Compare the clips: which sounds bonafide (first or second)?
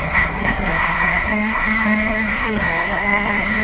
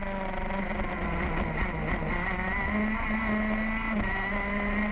second